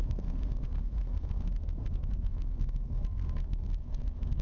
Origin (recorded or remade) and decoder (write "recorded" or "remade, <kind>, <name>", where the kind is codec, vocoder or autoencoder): remade, codec, SNAC